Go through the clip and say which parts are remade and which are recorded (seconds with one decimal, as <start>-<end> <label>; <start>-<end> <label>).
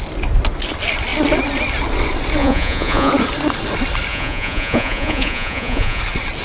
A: 0.0-2.4 recorded; 2.4-3.1 remade; 3.1-4.1 recorded; 4.1-6.0 remade; 6.0-6.4 recorded